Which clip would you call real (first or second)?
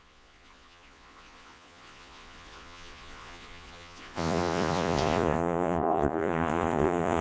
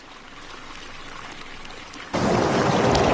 second